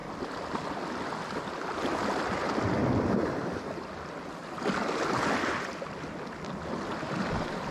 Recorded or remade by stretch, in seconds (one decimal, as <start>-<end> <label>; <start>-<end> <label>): 0.0-7.7 recorded